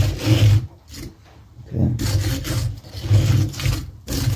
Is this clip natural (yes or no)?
yes